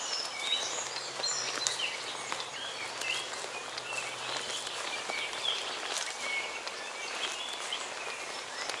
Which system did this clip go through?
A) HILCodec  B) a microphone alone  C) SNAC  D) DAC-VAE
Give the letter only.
B